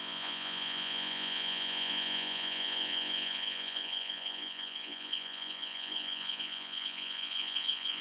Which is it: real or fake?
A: fake